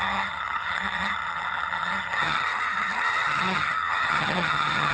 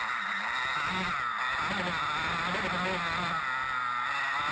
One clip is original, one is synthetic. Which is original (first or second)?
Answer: second